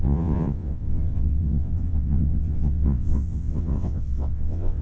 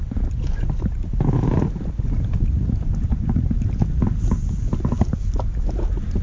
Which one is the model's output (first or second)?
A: first